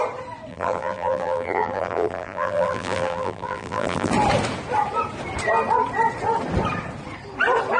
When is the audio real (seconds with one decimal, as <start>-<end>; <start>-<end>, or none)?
0.0-0.5; 4.1-7.8